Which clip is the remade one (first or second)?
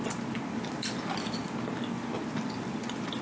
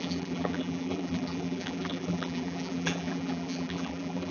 second